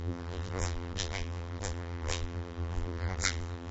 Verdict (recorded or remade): remade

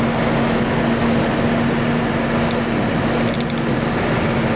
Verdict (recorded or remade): recorded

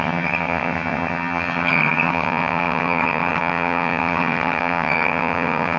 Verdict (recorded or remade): remade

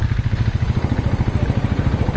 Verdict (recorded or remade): recorded